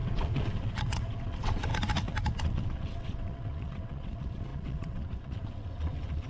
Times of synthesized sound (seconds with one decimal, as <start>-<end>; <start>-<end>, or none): 0.0-1.7; 2.4-6.3